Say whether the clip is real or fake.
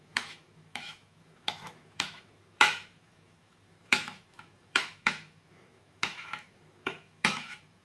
fake